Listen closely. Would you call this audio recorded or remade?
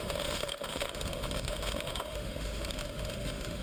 remade